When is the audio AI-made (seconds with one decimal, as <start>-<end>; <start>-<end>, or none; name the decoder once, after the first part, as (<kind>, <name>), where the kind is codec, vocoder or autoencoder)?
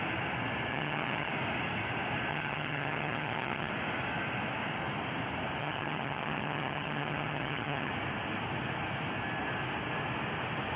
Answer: 0.7-1.3 (vocoder, HiFi-GAN); 2.3-3.7; 5.6-7.9